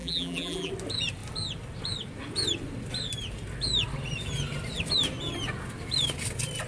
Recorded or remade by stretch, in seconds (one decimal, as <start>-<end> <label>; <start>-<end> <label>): 0.0-0.7 remade; 0.7-6.7 recorded